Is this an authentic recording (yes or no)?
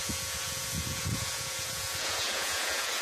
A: no